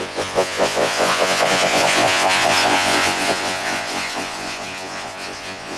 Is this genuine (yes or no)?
no